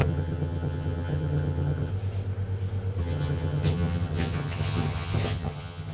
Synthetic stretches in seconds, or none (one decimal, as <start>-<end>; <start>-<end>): 0.0-1.9; 3.0-5.9